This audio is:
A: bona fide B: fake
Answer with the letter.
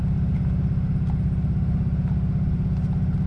A